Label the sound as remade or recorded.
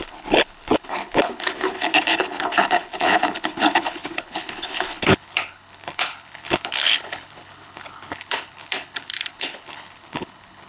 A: remade